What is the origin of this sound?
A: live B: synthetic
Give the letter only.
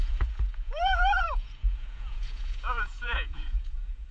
B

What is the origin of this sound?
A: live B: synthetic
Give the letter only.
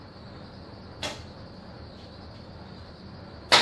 A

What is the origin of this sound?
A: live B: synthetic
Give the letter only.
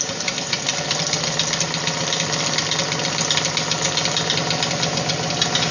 A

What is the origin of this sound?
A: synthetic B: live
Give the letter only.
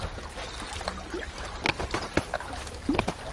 B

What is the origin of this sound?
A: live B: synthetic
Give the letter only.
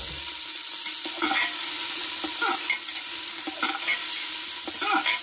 A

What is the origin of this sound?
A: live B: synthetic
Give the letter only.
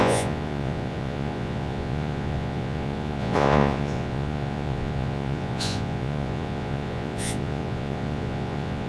B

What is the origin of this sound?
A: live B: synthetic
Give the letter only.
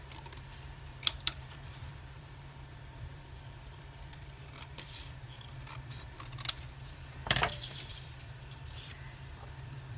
B